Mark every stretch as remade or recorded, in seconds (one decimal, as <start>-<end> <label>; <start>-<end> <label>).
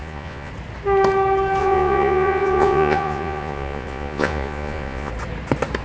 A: 0.0-0.5 remade; 0.5-1.6 recorded; 1.6-5.1 remade; 5.1-5.8 recorded